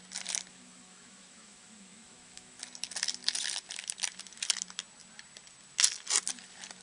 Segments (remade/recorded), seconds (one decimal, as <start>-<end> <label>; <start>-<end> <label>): 0.0-0.5 recorded; 0.5-2.6 remade; 2.6-6.8 recorded